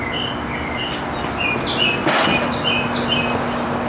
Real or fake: real